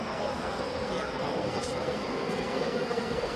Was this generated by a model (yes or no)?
yes